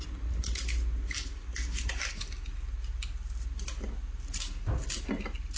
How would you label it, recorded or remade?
recorded